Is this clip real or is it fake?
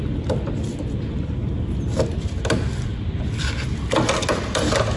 real